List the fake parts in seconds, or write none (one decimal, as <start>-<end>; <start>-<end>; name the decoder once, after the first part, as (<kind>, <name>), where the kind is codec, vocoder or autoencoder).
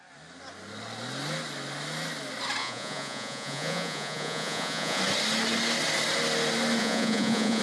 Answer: 2.6-5.0 (vocoder, Vocos); 6.8-7.6